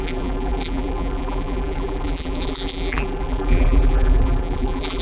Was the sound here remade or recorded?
remade